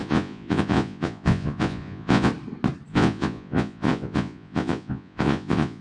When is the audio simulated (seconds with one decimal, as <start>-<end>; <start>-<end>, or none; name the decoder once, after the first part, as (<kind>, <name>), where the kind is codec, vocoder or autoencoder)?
0.0-2.3 (vocoder, Vocos); 2.9-5.8